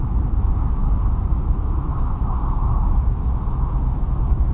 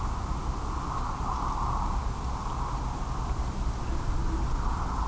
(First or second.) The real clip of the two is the second